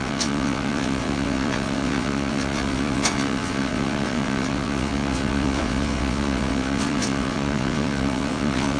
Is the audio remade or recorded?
remade